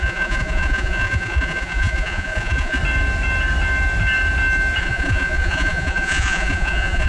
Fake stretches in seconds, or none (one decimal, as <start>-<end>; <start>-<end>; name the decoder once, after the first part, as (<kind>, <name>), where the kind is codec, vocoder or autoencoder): 0.0-2.8 (vocoder, Vocos); 4.8-7.1